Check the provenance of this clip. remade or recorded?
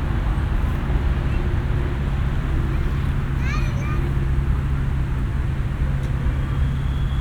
recorded